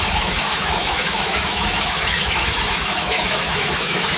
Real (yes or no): no